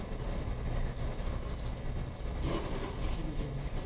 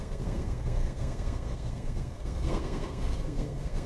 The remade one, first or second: second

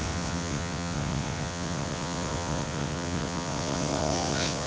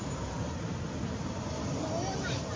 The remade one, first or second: first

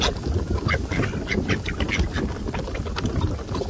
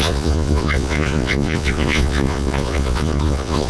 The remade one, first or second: second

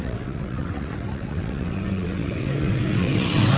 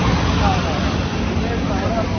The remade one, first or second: first